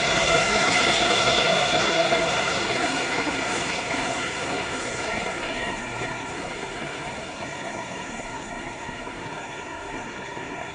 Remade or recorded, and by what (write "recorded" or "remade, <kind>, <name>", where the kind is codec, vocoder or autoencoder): remade, codec, SNAC